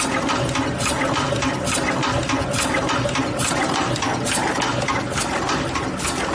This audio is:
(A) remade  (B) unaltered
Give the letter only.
B